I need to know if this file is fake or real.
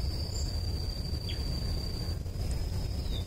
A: real